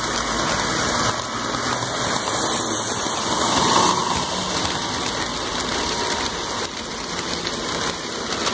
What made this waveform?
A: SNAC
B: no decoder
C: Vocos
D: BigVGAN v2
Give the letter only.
B